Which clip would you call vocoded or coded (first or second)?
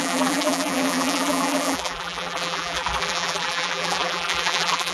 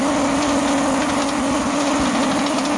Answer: first